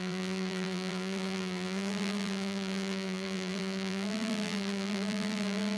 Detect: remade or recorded remade